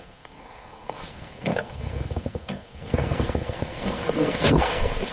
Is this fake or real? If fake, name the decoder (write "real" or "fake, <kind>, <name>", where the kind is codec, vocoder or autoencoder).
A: fake, codec, SNAC